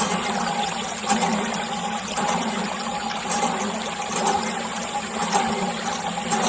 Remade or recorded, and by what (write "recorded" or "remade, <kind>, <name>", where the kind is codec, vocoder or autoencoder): recorded